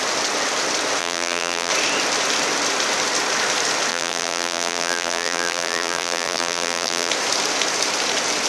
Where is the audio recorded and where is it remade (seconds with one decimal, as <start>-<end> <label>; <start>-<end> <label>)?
0.0-1.0 recorded; 1.0-1.7 remade; 1.7-3.9 recorded; 3.9-7.1 remade; 7.1-8.5 recorded